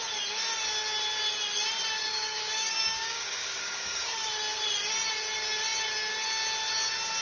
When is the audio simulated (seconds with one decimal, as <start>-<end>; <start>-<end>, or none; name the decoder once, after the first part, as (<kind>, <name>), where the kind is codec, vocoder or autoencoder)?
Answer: 2.0-4.3 (codec, DAC)